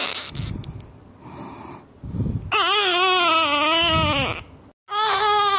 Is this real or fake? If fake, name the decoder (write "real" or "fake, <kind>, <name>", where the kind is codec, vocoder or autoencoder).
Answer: real